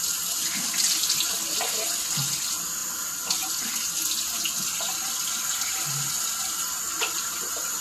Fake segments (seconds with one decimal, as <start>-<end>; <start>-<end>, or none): none